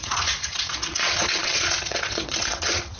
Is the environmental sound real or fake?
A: fake